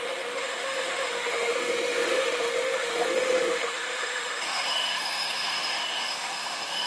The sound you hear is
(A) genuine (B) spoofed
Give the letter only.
B